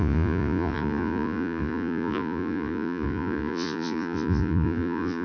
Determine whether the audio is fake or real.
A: fake